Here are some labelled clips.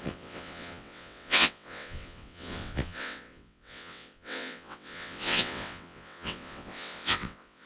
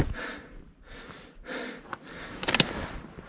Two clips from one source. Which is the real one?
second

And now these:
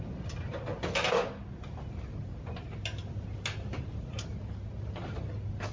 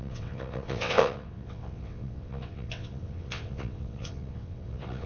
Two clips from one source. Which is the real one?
first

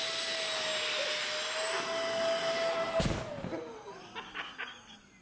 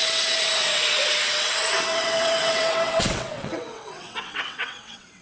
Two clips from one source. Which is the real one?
first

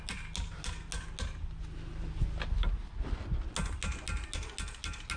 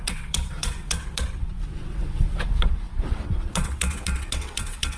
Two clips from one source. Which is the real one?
first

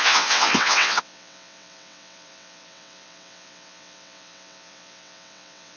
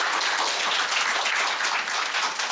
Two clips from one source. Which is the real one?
second